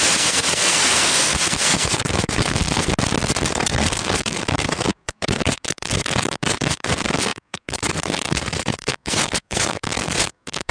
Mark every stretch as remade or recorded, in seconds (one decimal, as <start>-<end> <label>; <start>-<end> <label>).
0.0-2.9 remade; 2.9-3.5 recorded; 3.5-10.7 remade